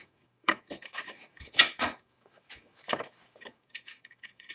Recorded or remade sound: remade